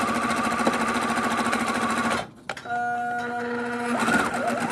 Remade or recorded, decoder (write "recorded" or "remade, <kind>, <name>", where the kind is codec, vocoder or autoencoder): recorded